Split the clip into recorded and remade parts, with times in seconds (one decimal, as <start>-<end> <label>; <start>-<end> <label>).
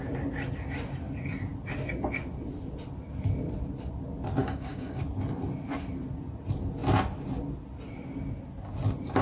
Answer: 0.0-4.4 recorded; 4.4-5.0 remade; 5.0-9.2 recorded